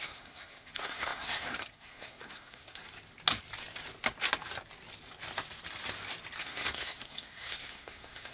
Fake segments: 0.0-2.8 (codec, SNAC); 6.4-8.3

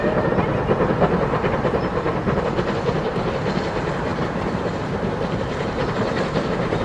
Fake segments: 0.0-2.1 (vocoder, BigVGAN v2); 2.8-6.8

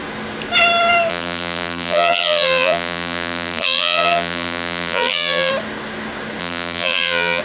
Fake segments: 1.1-5.5 (vocoder, BigVGAN v2); 6.4-7.4